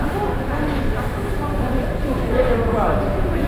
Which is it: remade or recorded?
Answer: recorded